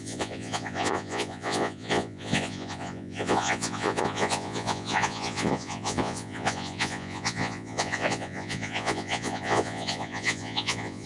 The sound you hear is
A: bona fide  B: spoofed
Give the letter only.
B